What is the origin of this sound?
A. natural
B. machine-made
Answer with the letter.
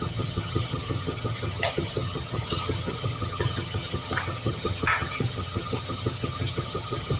B